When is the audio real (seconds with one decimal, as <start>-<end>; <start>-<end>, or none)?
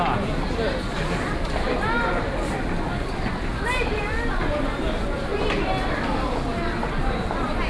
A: 0.0-7.7